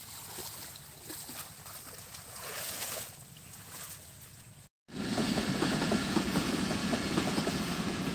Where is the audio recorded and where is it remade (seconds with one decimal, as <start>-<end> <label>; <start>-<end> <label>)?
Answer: 0.0-0.4 remade; 0.4-2.0 recorded; 2.0-8.1 remade